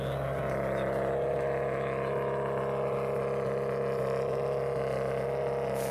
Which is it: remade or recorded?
recorded